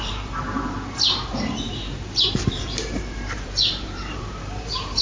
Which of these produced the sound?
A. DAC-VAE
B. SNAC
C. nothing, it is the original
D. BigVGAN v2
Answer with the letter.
D